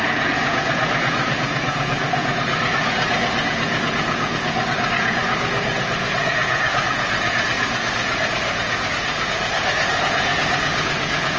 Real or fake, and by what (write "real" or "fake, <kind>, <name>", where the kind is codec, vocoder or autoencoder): fake, vocoder, Vocos